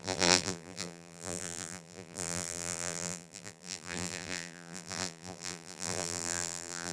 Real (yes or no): no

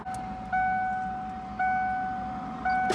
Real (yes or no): yes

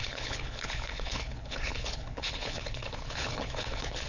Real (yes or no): no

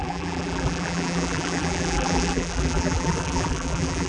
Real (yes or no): no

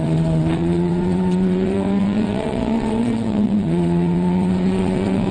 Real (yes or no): no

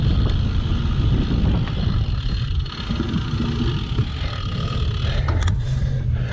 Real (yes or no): yes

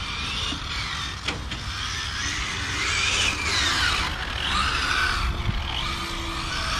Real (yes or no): yes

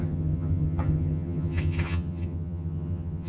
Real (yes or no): no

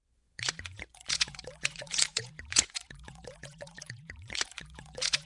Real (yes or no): no